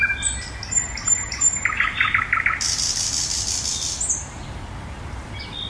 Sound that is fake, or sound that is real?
real